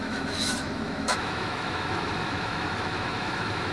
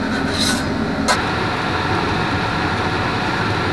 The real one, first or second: second